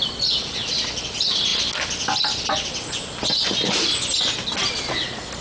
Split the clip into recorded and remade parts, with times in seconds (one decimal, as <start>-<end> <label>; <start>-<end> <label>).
0.0-5.4 recorded